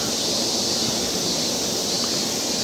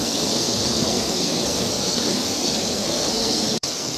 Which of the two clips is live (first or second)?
first